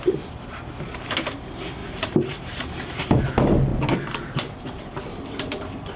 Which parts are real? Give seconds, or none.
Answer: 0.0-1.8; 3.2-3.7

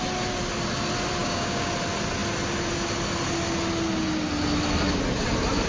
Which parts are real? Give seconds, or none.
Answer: 0.0-1.2; 1.7-5.7

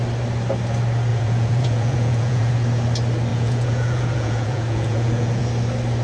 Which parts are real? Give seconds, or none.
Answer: 0.0-1.1; 2.5-3.3; 5.4-6.0

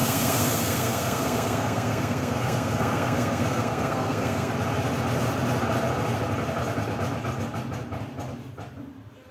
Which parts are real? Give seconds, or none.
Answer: 4.5-9.3

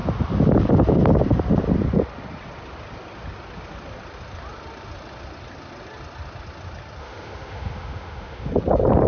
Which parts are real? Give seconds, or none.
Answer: 0.0-7.0; 8.5-9.1

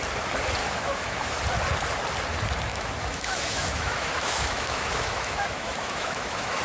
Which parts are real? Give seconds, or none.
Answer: 0.0-0.6; 1.4-2.7

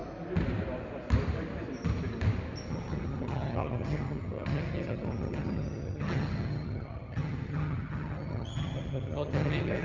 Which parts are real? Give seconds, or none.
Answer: 0.0-2.7